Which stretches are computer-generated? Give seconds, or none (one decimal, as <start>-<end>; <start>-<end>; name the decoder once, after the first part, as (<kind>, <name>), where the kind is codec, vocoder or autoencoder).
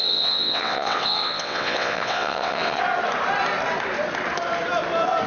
0.0-2.8 (vocoder, WaveNeXt)